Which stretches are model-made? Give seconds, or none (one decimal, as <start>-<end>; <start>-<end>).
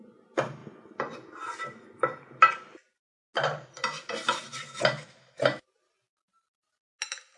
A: none